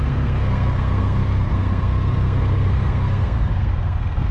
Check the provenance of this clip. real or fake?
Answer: fake